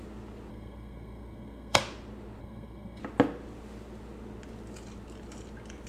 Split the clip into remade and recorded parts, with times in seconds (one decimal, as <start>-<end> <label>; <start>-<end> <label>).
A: 0.0-0.5 recorded; 0.5-1.8 remade; 1.8-2.4 recorded; 2.4-3.0 remade; 3.0-5.9 recorded